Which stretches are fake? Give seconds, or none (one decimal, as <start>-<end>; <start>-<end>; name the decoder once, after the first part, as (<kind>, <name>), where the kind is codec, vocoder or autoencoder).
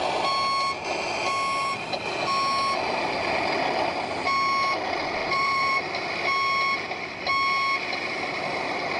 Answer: 1.6-2.2 (vocoder, BigVGAN v2); 5.2-5.9